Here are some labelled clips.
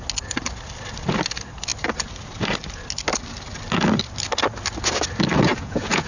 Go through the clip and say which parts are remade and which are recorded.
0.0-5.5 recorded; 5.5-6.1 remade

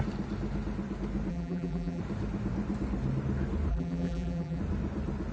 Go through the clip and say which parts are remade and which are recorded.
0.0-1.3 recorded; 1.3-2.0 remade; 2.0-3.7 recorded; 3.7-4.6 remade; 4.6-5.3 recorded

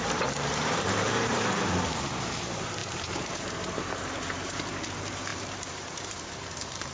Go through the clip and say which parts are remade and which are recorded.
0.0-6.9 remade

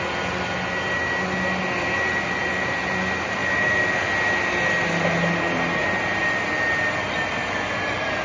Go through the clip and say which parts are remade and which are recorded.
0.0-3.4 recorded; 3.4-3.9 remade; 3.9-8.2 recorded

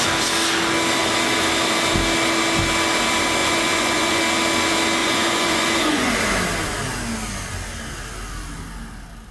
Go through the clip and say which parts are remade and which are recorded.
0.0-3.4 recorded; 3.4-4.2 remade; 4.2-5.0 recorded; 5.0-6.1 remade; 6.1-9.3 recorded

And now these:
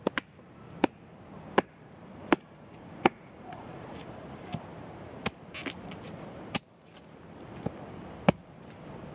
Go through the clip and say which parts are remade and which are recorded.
0.0-2.2 recorded; 2.2-4.0 remade; 4.0-9.1 recorded

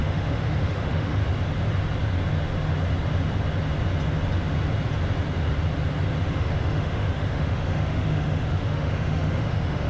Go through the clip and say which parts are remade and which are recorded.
0.0-1.2 remade; 1.2-6.2 recorded; 6.2-9.9 remade